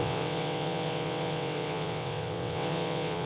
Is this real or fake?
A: fake